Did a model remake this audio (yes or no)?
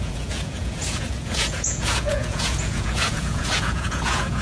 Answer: yes